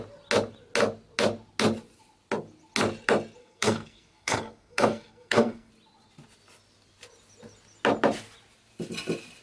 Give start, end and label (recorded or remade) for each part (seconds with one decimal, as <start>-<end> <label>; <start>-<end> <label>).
0.0-3.4 recorded; 3.4-5.7 remade; 5.7-9.4 recorded